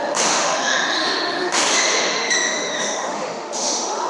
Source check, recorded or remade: remade